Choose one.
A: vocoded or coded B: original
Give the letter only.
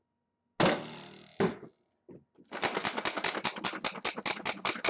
B